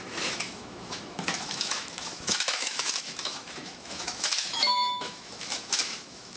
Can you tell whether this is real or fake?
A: fake